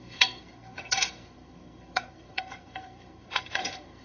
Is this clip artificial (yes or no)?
yes